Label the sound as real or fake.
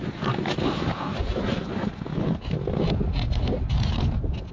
real